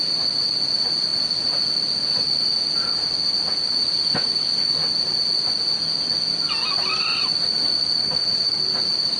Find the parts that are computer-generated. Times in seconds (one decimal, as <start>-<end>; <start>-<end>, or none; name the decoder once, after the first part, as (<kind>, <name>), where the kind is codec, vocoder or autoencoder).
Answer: 8.0-8.6 (autoencoder, DAC-VAE)